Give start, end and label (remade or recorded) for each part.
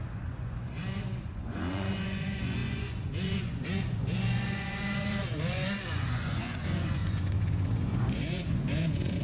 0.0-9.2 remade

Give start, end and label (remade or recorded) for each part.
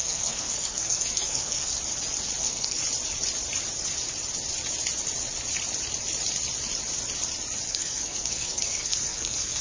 0.0-1.7 remade; 1.7-2.4 recorded; 2.4-2.8 remade; 2.8-7.7 recorded; 7.7-9.6 remade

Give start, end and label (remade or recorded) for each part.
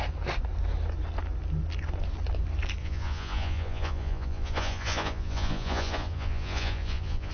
0.0-2.8 recorded; 2.8-7.3 remade